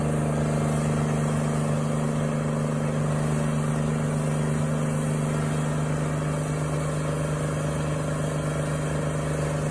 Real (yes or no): yes